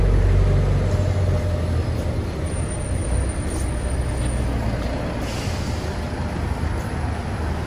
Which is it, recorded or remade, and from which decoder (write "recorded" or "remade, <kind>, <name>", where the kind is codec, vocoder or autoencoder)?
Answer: recorded